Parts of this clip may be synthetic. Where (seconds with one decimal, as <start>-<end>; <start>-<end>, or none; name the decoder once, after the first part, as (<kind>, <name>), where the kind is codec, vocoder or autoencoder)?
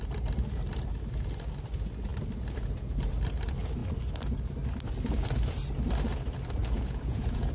6.6-7.5 (vocoder, Vocos)